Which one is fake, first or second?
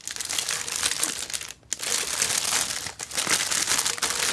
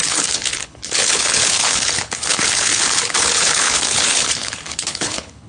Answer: second